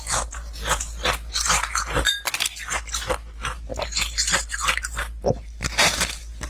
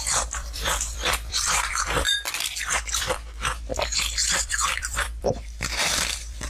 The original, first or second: first